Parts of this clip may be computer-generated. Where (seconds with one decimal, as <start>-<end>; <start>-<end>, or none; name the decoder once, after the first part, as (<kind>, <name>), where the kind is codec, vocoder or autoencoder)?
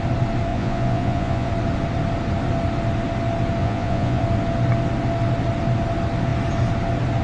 0.5-1.5 (vocoder, Vocos); 3.6-4.2